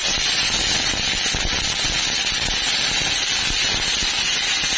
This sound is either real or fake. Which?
real